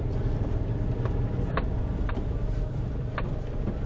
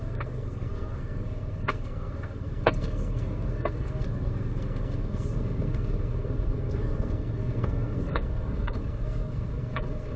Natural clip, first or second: first